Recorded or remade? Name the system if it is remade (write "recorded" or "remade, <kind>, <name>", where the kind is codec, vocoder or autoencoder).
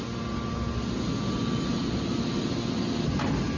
recorded